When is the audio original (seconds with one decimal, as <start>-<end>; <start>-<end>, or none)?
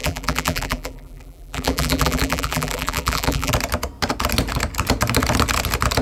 3.5-6.0